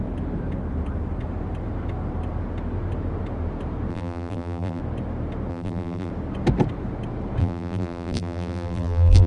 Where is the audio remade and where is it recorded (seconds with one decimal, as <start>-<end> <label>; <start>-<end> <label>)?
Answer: 0.0-3.9 recorded; 3.9-4.8 remade; 4.8-5.5 recorded; 5.5-6.1 remade; 6.1-7.4 recorded; 7.4-9.3 remade

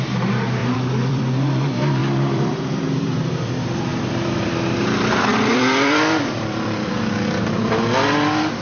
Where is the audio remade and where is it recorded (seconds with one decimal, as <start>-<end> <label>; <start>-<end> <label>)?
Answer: 0.0-0.6 recorded; 0.6-1.2 remade; 1.2-2.0 recorded; 2.0-3.3 remade; 3.3-3.9 recorded; 3.9-4.5 remade; 4.5-5.3 recorded; 5.3-6.9 remade; 6.9-8.6 recorded